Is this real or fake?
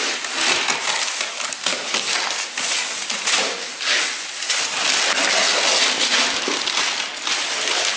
real